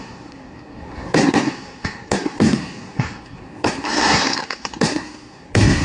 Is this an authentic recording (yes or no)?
no